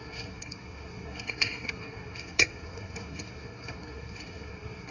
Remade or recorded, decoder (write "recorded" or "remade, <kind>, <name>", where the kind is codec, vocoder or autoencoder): remade, codec, SNAC